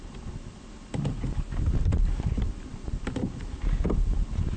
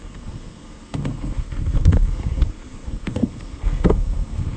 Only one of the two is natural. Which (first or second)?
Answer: first